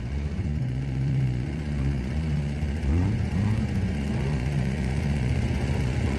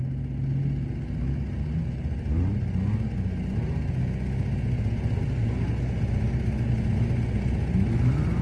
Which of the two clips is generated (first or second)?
first